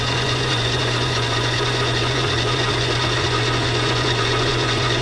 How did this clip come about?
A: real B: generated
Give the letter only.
B